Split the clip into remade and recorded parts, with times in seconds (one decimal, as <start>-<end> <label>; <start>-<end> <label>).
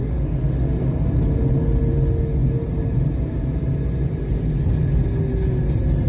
0.0-1.0 remade; 1.0-6.1 recorded